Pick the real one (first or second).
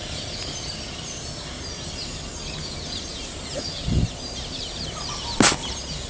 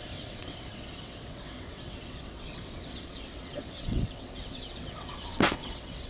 first